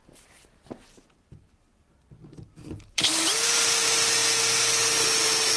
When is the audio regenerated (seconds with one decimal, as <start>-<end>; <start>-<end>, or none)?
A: 0.0-3.4